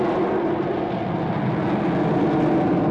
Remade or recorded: recorded